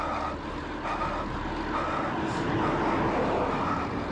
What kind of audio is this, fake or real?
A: real